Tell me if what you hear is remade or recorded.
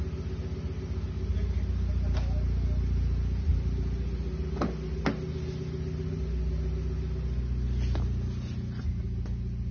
recorded